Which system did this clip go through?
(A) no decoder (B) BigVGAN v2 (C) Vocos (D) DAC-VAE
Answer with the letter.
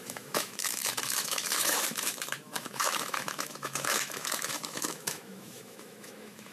D